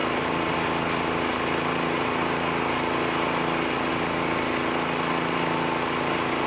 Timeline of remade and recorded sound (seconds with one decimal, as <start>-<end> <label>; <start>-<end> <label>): 0.0-6.5 recorded

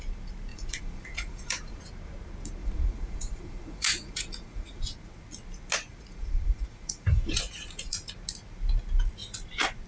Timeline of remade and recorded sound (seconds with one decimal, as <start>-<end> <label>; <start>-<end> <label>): 0.0-0.5 recorded; 0.5-1.8 remade; 1.8-2.6 recorded; 2.6-4.8 remade; 4.8-5.9 recorded; 5.9-8.1 remade; 8.1-9.9 recorded

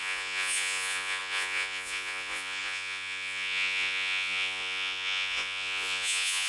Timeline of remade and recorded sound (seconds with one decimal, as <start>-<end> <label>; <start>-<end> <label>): 0.0-6.5 remade

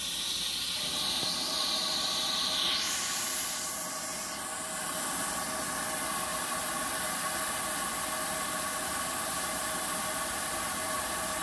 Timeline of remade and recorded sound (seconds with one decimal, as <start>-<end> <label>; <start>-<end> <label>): 0.0-11.4 recorded

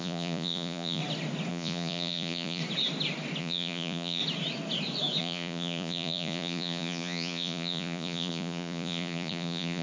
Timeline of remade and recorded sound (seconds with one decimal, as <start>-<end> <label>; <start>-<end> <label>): 0.0-1.0 remade; 1.0-1.5 recorded; 1.5-2.6 remade; 2.6-3.4 recorded; 3.4-4.2 remade; 4.2-5.2 recorded; 5.2-9.8 remade

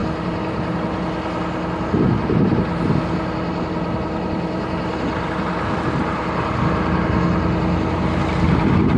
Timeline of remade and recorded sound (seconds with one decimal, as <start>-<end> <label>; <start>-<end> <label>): 0.0-9.0 recorded

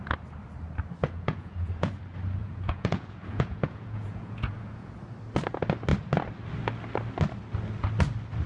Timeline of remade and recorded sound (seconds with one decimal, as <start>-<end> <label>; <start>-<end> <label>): 0.0-1.0 recorded; 1.0-2.0 remade; 2.0-2.4 recorded; 2.4-4.9 remade; 4.9-8.5 recorded